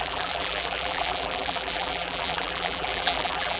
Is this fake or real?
fake